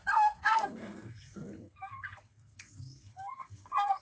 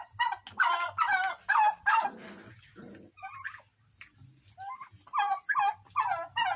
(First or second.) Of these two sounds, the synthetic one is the first